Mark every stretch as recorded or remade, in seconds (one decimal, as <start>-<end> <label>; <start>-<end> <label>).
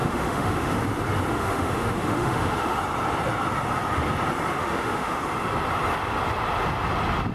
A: 0.0-0.8 remade; 0.8-1.3 recorded; 1.3-2.8 remade; 2.8-4.5 recorded; 4.5-5.2 remade; 5.2-7.3 recorded